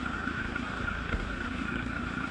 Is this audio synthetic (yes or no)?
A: yes